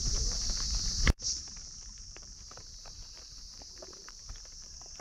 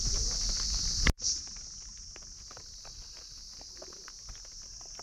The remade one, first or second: first